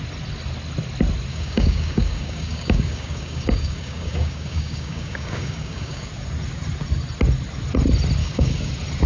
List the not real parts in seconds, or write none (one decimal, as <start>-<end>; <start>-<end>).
1.3-6.1; 8.2-8.7